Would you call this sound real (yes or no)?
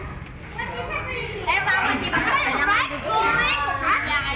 yes